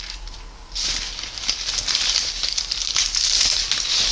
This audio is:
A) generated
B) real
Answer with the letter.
B